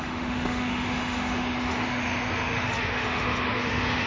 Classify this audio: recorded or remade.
remade